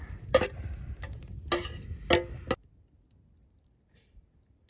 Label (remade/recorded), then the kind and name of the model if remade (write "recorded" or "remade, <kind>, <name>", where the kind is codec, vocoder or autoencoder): recorded